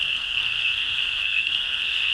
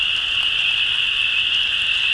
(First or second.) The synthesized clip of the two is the first